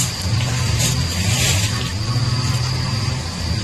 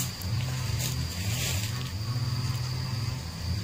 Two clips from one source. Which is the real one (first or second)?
second